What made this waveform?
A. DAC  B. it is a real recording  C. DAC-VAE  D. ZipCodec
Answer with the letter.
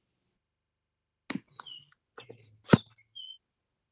B